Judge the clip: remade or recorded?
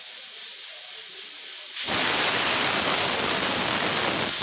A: recorded